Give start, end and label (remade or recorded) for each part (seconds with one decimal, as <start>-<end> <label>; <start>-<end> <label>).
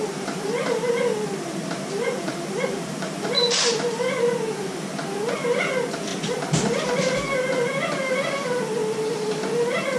0.0-4.2 remade; 4.2-10.0 recorded